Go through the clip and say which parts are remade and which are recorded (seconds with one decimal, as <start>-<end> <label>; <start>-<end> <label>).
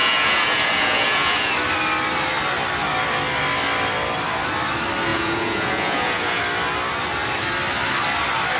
0.0-1.5 remade; 1.5-5.1 recorded; 5.1-6.4 remade; 6.4-8.6 recorded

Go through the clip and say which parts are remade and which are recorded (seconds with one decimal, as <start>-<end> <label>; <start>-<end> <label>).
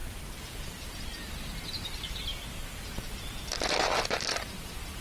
0.0-5.0 recorded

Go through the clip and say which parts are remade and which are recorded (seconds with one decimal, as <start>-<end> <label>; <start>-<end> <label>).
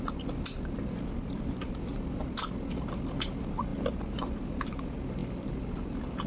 0.0-6.3 recorded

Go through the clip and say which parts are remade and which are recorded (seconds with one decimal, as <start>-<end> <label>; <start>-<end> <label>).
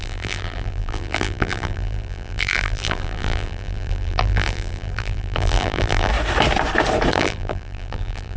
0.0-6.1 remade; 6.1-7.1 recorded; 7.1-8.4 remade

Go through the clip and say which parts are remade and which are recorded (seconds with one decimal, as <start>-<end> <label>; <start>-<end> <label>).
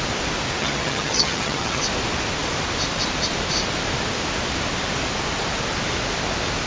0.0-0.6 recorded; 0.6-1.8 remade; 1.8-6.7 recorded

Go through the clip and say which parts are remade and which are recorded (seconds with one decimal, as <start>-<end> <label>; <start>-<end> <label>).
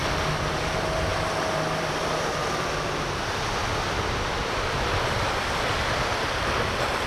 0.0-7.1 recorded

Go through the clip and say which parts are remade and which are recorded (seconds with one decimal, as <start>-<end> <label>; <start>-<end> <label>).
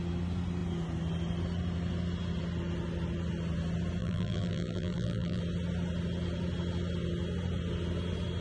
0.0-4.0 recorded; 4.0-5.4 remade; 5.4-8.4 recorded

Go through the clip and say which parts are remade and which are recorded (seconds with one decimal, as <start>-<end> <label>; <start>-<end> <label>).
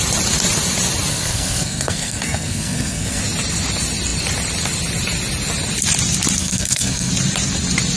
0.0-1.1 recorded; 1.1-3.2 remade; 3.2-6.4 recorded; 6.4-7.1 remade; 7.1-8.0 recorded